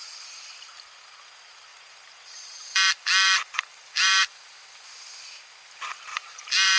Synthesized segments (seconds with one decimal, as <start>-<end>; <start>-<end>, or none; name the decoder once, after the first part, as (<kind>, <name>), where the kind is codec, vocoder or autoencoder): 1.7-4.2 (vocoder, BigVGAN v2); 6.1-6.8